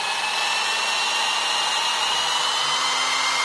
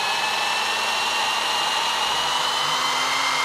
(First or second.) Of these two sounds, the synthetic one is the second